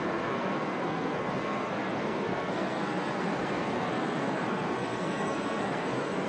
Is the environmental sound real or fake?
fake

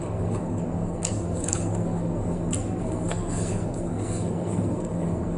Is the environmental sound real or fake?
fake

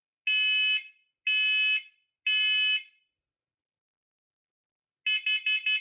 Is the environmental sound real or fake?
real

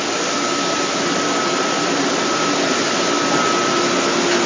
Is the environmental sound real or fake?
real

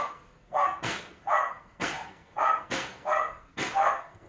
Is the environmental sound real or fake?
fake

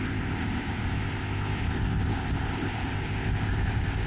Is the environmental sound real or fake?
fake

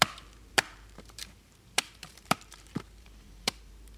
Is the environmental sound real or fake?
fake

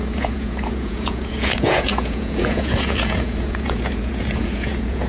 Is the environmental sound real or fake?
fake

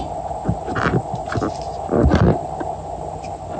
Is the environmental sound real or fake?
real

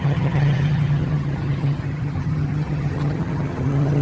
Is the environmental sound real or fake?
fake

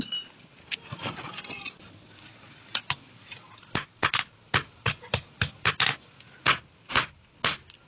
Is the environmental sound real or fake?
real